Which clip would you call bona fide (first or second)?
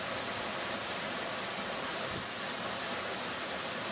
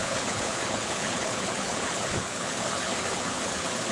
first